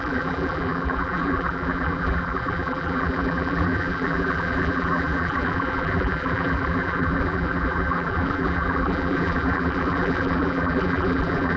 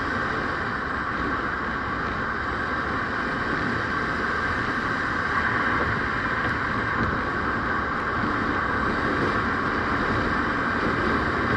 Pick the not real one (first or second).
first